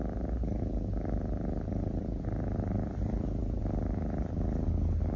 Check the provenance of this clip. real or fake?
real